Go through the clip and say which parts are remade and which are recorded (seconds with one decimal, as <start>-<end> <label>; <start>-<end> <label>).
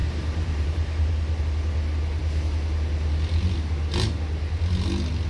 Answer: 0.0-1.4 remade; 1.4-5.3 recorded